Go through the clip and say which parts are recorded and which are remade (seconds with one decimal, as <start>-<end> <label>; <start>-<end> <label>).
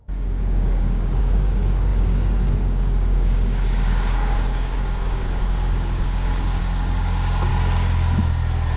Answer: 0.0-7.5 remade; 7.5-8.8 recorded